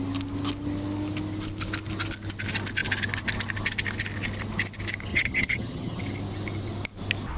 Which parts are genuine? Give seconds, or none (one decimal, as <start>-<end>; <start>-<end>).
0.0-5.1; 6.0-7.4

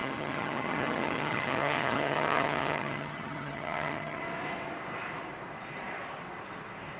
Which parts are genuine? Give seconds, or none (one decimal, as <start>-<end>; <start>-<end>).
4.2-7.0

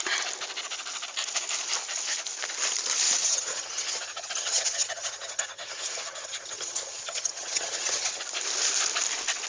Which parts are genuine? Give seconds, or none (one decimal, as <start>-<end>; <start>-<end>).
0.0-3.2; 8.2-9.5